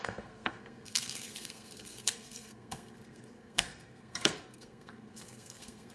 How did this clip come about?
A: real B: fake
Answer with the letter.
B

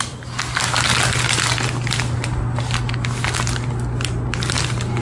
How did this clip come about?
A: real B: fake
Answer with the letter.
A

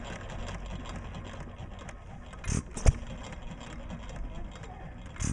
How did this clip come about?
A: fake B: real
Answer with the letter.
B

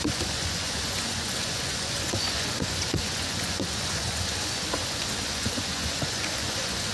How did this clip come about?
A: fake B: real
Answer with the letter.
A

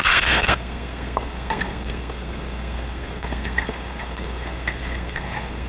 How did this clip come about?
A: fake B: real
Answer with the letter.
A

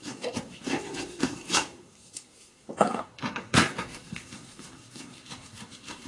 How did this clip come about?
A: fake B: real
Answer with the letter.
A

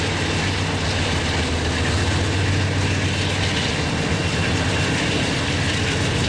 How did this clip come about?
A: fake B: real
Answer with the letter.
B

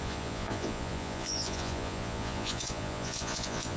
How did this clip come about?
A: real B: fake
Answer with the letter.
B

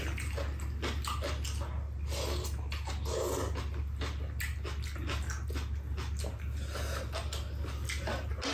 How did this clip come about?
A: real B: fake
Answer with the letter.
A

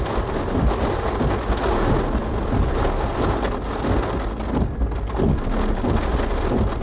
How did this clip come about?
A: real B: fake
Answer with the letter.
A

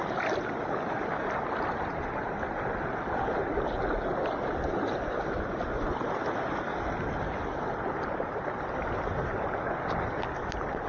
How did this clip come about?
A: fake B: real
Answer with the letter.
B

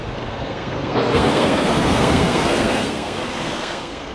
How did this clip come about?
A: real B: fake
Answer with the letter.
B